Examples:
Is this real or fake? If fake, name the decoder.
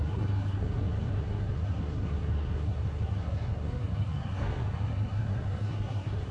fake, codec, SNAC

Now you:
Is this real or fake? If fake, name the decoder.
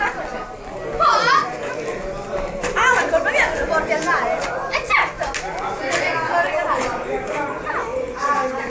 real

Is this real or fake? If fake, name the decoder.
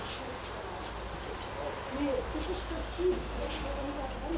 real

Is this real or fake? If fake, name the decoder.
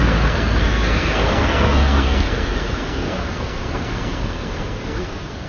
fake, codec, SNAC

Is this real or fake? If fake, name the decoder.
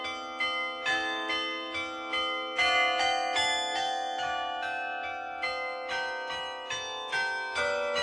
real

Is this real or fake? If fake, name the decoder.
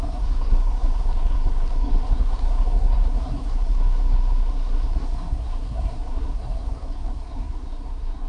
fake, codec, SNAC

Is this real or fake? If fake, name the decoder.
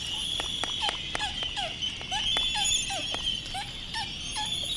real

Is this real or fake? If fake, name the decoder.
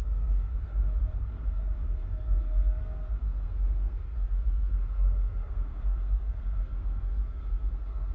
fake, codec, SNAC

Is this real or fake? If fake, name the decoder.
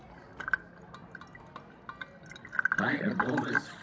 real